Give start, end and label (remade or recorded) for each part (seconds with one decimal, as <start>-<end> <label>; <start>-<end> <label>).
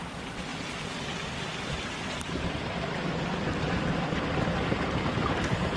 0.0-5.8 recorded